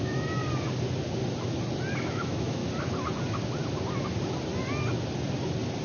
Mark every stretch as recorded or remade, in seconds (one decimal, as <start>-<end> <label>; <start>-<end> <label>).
0.0-0.4 remade; 0.4-2.0 recorded; 2.0-2.6 remade; 2.6-5.8 recorded